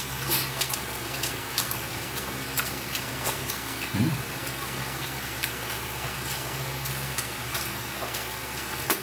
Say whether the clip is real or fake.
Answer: fake